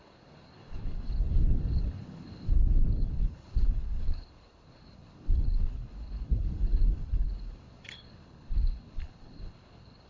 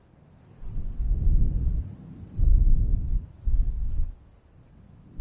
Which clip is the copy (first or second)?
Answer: first